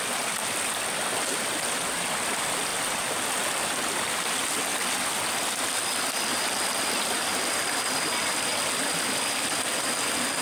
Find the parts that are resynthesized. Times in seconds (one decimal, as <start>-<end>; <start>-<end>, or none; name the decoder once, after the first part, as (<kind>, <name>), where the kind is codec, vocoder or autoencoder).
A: 0.0-2.7 (vocoder, BigVGAN v2); 3.9-4.7; 6.4-8.5